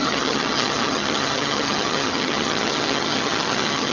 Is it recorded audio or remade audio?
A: remade